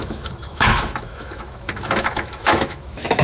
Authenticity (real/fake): fake